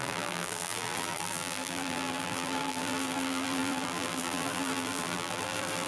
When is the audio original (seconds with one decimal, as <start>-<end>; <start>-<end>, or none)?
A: none